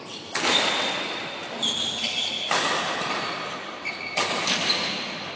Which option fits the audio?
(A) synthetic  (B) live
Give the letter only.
A